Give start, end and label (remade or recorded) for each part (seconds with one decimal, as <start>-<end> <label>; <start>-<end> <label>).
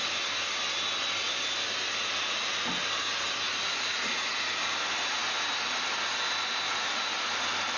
0.0-7.8 recorded